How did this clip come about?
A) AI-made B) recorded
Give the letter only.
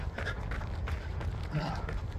B